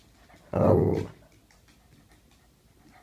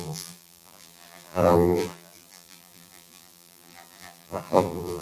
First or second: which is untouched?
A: first